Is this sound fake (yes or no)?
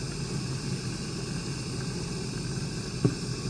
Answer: no